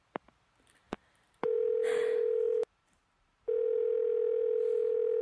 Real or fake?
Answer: fake